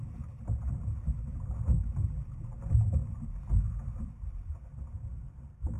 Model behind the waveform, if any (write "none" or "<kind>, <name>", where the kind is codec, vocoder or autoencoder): none